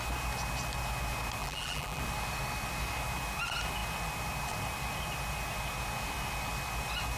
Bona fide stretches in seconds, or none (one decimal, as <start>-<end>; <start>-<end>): 0.0-1.4; 2.0-7.2